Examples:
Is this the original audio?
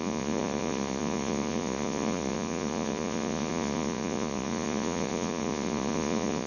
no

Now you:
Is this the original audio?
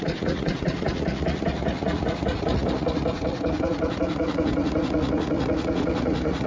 no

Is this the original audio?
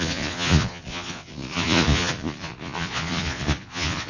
no